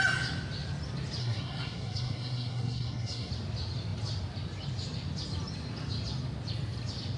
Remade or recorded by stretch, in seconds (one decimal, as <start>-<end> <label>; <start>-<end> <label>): 0.0-1.2 recorded; 1.2-3.3 remade; 3.3-7.2 recorded

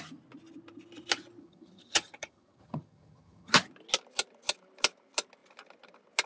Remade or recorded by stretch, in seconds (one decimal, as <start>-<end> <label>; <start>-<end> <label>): 0.0-1.4 recorded; 1.4-3.5 remade; 3.5-6.3 recorded

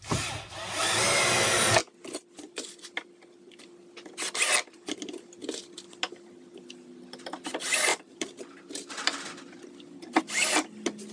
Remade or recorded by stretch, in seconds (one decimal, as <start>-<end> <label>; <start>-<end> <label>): 0.0-7.9 recorded; 7.9-8.9 remade; 8.9-11.1 recorded

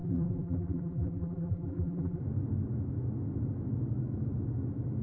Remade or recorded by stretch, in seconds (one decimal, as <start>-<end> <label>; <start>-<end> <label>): 0.0-2.2 remade; 2.2-5.0 recorded

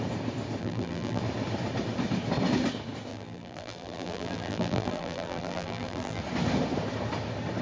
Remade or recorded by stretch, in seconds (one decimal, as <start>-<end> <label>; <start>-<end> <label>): 0.0-0.6 recorded; 0.6-1.2 remade; 1.2-3.1 recorded; 3.1-6.2 remade; 6.2-7.6 recorded